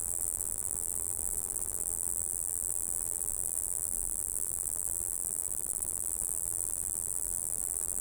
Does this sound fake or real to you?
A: fake